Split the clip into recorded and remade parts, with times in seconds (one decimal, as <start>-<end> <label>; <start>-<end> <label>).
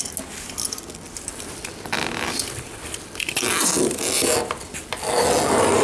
0.0-1.3 recorded; 1.3-4.3 remade; 4.3-5.8 recorded